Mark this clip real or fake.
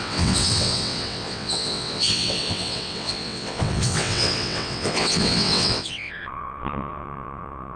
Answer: fake